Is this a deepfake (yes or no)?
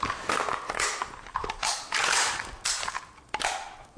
no